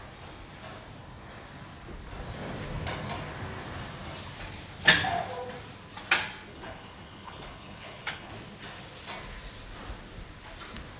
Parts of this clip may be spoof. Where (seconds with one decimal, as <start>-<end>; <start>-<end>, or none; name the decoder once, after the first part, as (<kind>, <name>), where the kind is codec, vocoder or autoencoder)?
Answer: 6.5-8.3 (codec, HILCodec)